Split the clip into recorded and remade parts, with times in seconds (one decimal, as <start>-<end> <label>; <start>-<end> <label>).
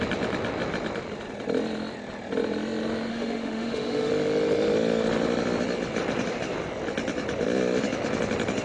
0.0-3.1 recorded; 3.1-4.1 remade; 4.1-8.6 recorded